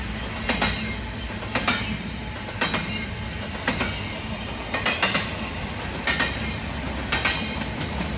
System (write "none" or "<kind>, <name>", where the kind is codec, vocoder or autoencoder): none